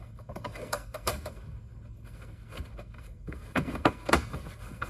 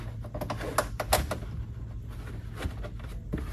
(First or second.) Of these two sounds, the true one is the second